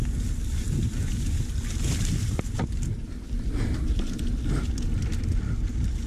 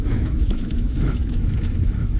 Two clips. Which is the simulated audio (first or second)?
second